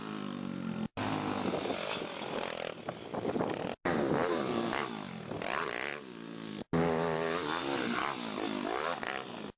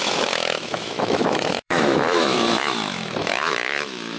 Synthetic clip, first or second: second